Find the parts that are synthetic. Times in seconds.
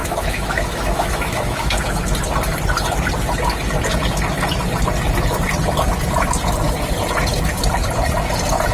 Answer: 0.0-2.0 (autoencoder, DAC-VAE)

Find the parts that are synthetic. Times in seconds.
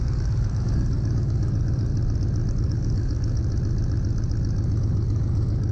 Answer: 0.0-1.9 (codec, DAC); 2.5-3.4; 4.8-5.7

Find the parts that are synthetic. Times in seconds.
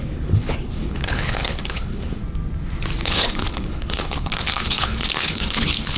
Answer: 0.0-2.2 (codec, HILCodec); 3.0-6.0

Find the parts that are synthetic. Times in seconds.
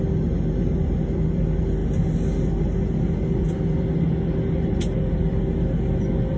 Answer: none